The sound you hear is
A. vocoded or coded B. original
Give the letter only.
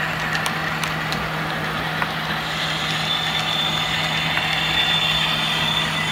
B